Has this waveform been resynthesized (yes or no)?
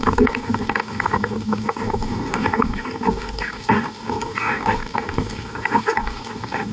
yes